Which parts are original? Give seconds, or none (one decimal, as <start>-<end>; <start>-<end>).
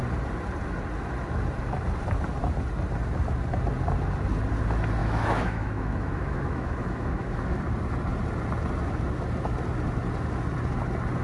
0.0-5.0; 7.6-11.2